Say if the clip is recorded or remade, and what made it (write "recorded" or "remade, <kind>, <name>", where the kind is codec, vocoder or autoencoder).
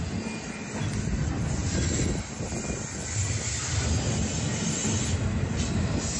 recorded